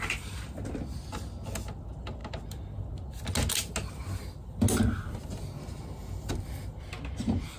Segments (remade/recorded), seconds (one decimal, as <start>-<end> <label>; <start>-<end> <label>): 0.0-7.6 recorded